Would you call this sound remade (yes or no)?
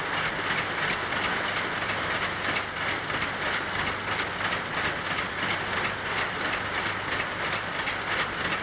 no